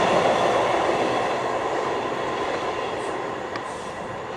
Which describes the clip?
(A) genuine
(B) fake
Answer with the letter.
A